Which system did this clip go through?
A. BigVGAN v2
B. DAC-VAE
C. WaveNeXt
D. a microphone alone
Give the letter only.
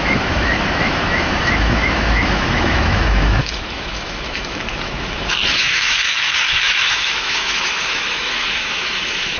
B